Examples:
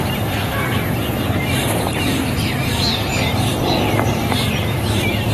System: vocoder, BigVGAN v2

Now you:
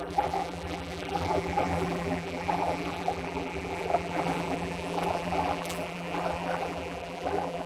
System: vocoder, BigVGAN v2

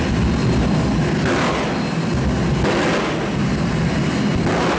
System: none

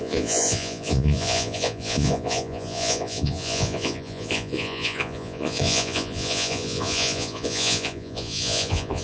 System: vocoder, Vocos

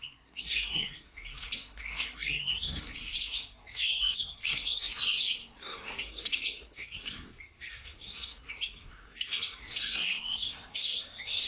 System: codec, SNAC